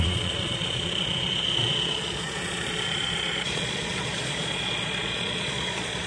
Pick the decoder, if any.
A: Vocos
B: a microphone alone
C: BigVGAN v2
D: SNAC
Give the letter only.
A